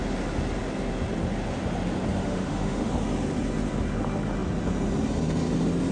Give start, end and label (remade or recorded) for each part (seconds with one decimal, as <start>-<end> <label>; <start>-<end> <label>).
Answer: 0.0-2.2 recorded; 2.2-2.9 remade; 2.9-5.9 recorded

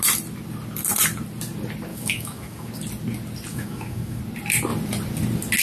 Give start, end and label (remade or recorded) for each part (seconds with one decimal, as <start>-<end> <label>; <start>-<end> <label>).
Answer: 0.0-1.9 recorded; 1.9-2.7 remade; 2.7-3.5 recorded; 3.5-4.2 remade; 4.2-5.6 recorded

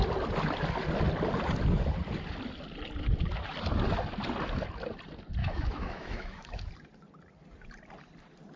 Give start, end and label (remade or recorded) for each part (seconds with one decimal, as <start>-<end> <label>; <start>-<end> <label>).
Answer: 0.0-5.4 recorded; 5.4-6.7 remade; 6.7-8.6 recorded

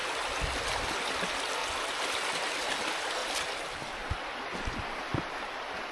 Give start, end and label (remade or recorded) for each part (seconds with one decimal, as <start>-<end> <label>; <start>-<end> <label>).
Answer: 0.0-5.9 recorded

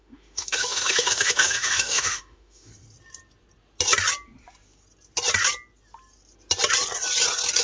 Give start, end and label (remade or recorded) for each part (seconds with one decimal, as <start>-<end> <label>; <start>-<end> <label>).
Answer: 0.0-2.7 remade; 2.7-7.6 recorded

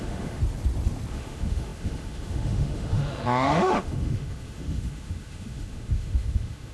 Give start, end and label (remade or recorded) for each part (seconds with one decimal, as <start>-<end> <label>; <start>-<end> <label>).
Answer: 0.0-0.4 remade; 0.4-1.1 recorded; 1.1-6.7 remade

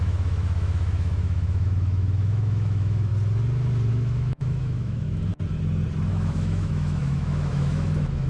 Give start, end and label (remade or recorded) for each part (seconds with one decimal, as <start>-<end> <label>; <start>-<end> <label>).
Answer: 0.0-3.1 remade; 3.1-3.9 recorded; 3.9-5.3 remade; 5.3-6.1 recorded; 6.1-8.3 remade

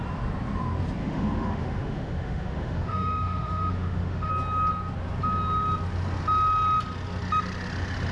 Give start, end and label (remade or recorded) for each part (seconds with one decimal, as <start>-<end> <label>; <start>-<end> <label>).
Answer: 0.0-1.0 recorded; 1.0-4.3 remade; 4.3-8.1 recorded